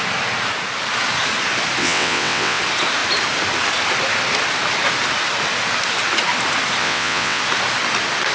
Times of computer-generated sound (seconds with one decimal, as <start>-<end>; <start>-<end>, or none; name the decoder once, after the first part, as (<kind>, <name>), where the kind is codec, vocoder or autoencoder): 1.8-2.6 (vocoder, WaveNeXt); 6.8-7.4